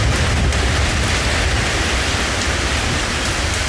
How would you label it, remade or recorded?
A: recorded